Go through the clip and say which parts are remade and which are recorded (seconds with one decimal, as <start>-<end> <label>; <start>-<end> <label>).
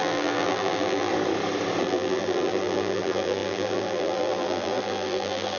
0.0-1.1 remade; 1.1-1.8 recorded; 1.8-5.6 remade